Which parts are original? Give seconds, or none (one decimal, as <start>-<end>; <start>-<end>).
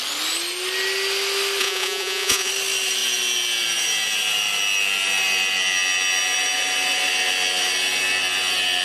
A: 0.0-1.6; 2.5-8.8